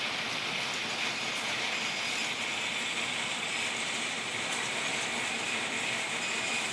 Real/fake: real